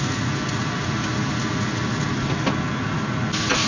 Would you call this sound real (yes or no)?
yes